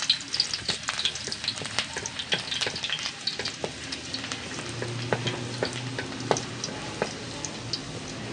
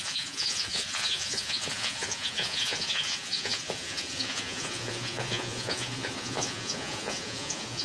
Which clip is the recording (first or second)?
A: first